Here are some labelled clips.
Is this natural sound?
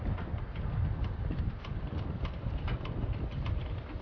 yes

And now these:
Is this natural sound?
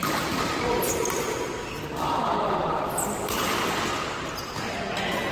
yes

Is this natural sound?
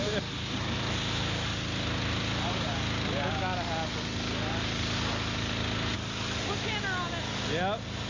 yes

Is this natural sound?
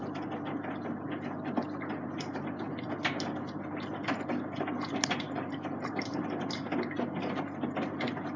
yes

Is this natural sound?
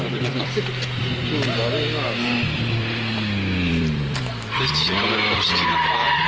no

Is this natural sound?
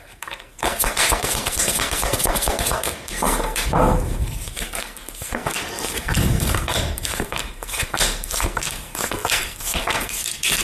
no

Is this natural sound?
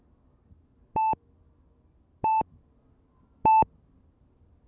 yes